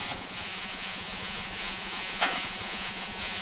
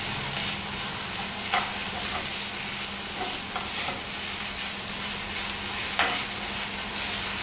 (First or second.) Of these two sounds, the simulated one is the first